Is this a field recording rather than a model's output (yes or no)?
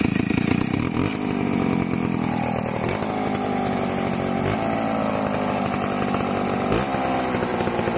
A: yes